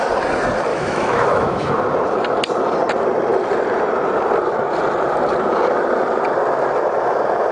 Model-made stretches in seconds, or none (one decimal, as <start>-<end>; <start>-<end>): 0.7-1.7

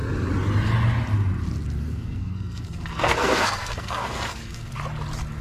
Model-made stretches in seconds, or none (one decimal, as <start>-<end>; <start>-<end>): 1.9-4.7

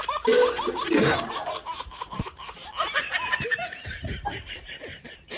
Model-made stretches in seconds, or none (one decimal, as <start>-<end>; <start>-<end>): 0.0-2.6; 3.3-5.4

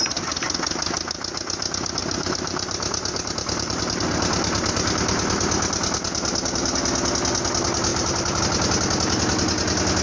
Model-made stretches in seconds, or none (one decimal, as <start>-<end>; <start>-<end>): 2.0-3.8; 7.9-8.4

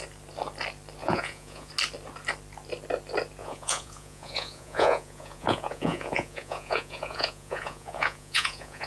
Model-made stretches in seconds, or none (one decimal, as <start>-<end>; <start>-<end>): 1.0-1.7; 3.4-8.9

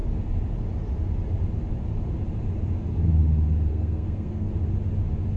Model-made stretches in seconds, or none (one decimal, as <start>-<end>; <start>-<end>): 3.7-4.5